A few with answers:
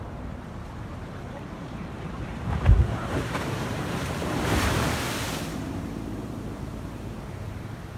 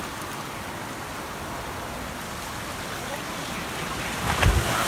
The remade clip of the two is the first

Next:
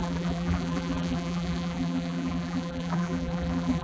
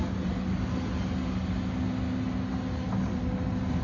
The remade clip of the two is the first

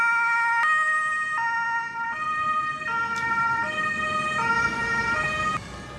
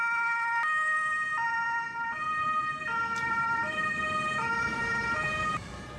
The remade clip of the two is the second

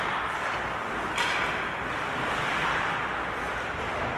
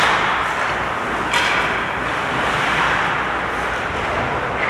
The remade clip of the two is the first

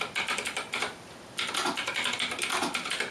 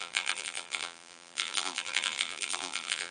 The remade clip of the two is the second